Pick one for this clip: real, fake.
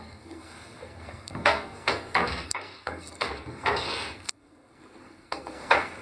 fake